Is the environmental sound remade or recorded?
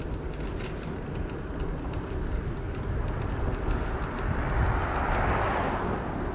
recorded